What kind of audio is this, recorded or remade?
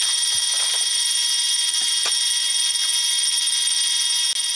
recorded